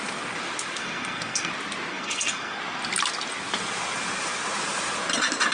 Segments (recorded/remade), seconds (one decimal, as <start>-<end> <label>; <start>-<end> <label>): 0.0-0.8 recorded; 0.8-1.5 remade; 1.5-1.9 recorded; 1.9-2.6 remade; 2.6-5.5 recorded